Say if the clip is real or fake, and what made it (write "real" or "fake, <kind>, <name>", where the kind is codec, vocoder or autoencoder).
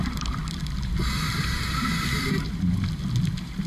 real